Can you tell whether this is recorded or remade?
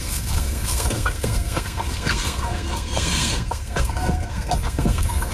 remade